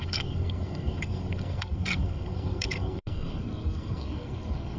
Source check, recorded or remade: remade